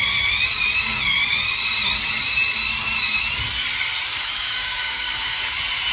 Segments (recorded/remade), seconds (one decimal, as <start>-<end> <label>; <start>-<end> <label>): 0.0-4.1 recorded; 4.1-5.5 remade; 5.5-5.9 recorded